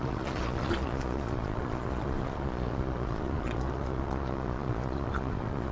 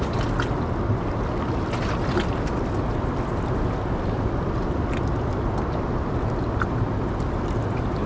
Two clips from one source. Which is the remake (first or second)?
first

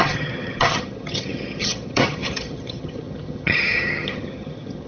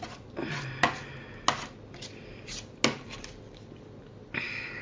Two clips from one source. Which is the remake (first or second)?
first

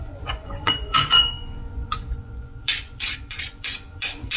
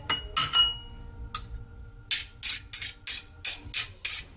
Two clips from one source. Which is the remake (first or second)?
first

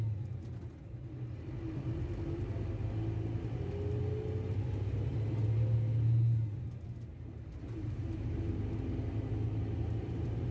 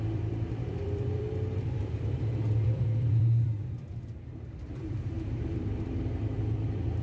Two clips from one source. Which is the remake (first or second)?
second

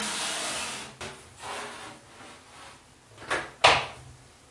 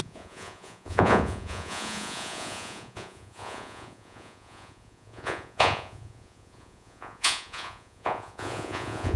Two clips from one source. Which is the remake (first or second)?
second